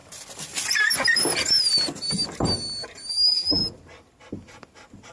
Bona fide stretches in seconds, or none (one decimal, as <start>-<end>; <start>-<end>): 0.0-3.1; 3.6-5.1